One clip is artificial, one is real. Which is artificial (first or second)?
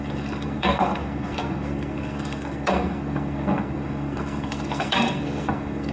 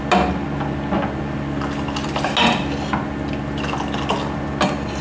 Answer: first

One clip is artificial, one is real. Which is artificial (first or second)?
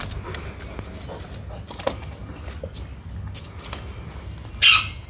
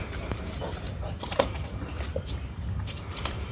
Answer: second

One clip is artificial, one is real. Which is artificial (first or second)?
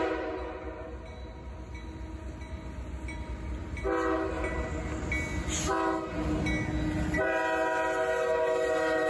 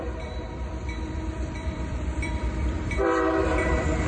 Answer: second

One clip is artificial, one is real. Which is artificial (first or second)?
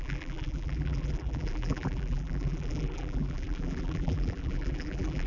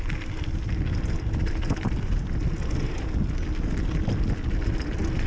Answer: first